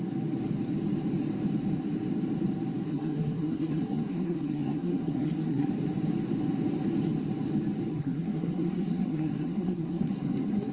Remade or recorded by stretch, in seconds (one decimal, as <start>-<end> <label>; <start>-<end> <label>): 0.0-2.9 recorded; 2.9-5.7 remade; 5.7-7.9 recorded; 7.9-10.7 remade